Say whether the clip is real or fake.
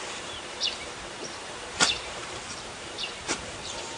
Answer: fake